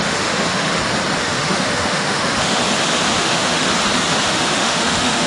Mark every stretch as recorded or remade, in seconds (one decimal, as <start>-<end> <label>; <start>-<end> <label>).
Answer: 0.0-0.7 remade; 0.7-1.2 recorded; 1.2-2.6 remade; 2.6-3.2 recorded; 3.2-3.7 remade; 3.7-4.3 recorded; 4.3-5.3 remade